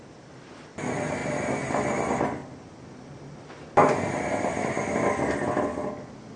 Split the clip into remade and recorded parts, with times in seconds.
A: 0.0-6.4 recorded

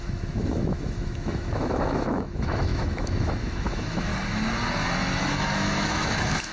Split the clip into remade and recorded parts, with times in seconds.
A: 0.0-4.1 remade; 4.1-5.2 recorded; 5.2-6.5 remade

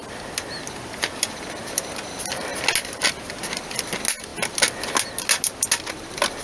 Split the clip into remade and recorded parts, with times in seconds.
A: 0.0-6.4 recorded

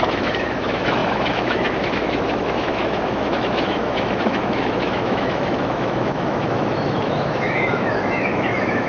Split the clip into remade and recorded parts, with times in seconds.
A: 0.0-8.9 remade

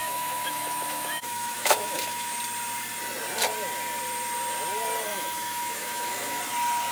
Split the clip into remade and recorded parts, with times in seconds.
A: 0.0-2.4 remade; 2.4-5.1 recorded; 5.1-6.4 remade; 6.4-6.9 recorded